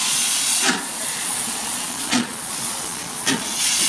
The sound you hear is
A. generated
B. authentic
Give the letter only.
A